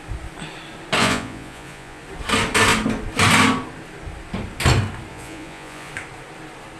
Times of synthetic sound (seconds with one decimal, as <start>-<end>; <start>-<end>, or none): 1.0-2.0; 5.1-5.9